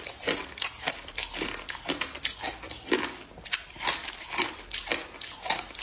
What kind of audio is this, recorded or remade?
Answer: recorded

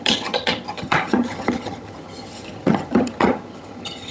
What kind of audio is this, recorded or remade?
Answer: remade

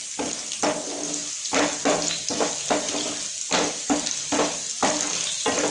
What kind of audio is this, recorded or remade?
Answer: recorded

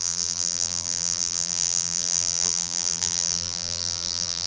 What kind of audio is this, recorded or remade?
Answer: remade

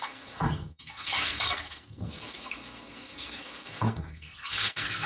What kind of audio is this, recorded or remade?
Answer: remade